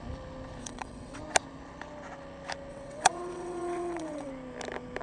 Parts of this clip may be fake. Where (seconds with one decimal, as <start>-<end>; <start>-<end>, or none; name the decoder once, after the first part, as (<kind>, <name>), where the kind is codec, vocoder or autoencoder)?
0.6-1.2 (vocoder, WaveNeXt); 2.7-4.3